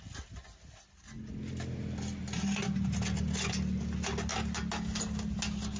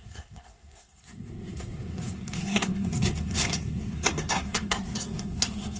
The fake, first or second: second